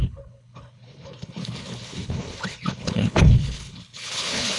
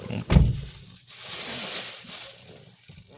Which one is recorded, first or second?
second